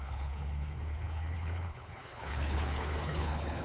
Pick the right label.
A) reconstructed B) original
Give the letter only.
A